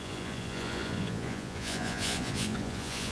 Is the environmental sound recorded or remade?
remade